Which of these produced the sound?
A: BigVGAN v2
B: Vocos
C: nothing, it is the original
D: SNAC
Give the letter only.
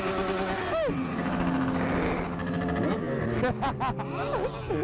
C